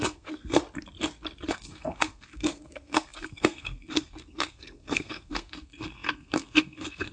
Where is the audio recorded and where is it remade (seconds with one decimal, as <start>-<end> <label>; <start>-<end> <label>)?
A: 0.0-0.6 remade; 0.6-1.5 recorded; 1.5-7.1 remade